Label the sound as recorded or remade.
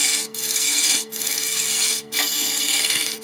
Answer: remade